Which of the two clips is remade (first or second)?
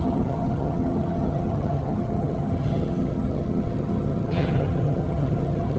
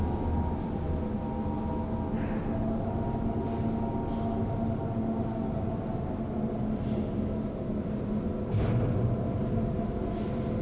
first